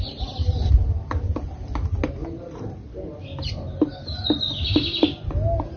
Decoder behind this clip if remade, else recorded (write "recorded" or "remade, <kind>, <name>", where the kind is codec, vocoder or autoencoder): recorded